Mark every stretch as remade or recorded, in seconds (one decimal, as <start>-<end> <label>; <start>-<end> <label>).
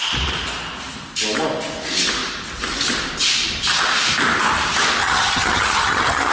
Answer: 0.0-5.0 recorded; 5.0-6.3 remade